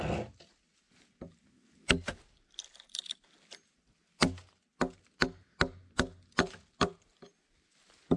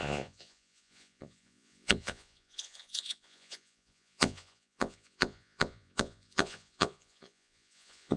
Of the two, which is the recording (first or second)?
first